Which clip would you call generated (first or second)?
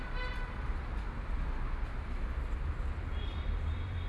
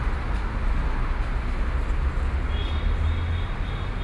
first